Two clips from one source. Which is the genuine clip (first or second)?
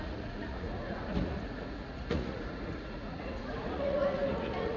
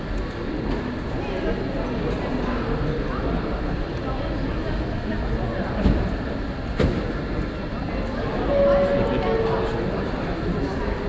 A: second